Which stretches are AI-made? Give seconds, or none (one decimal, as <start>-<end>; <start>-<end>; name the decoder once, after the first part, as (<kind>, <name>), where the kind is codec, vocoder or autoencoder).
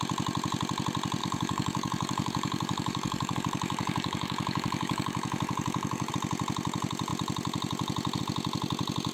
1.2-6.1 (codec, DAC)